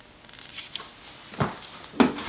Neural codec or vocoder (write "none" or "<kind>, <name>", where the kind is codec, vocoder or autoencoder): none